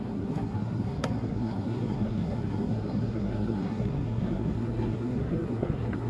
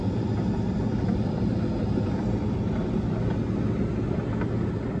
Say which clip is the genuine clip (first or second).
second